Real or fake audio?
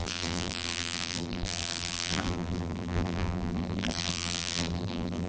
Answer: fake